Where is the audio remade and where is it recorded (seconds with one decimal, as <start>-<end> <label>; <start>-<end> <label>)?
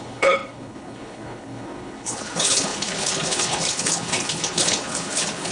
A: 0.0-5.5 remade